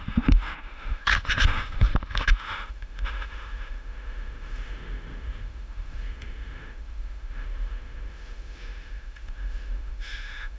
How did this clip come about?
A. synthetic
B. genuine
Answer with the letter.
A